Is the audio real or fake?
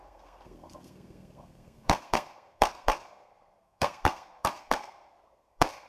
fake